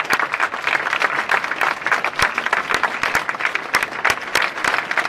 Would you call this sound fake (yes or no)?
no